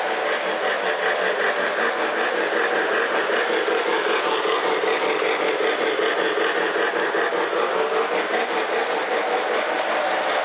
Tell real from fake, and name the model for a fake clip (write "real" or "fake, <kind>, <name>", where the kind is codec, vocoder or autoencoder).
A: real